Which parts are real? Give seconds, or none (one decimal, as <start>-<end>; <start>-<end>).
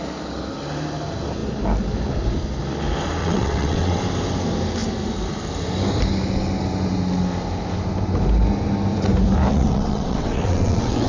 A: 0.0-3.2; 4.0-9.5